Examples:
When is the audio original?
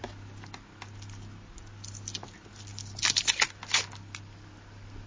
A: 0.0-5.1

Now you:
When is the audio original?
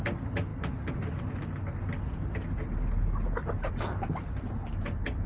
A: 0.0-5.3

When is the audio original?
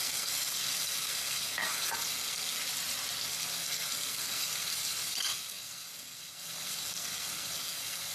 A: 2.6-3.2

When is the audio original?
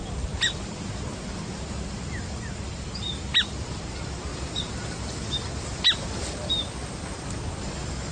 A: 0.0-8.1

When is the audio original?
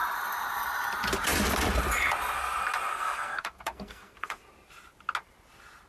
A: 0.0-2.9; 4.4-5.9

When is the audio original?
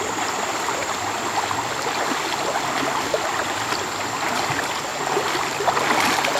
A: 0.0-4.9; 5.5-6.4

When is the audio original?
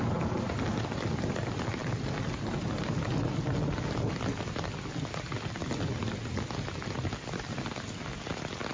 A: 0.0-8.7